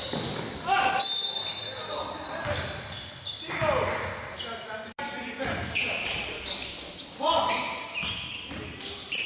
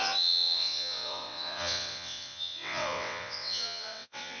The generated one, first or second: second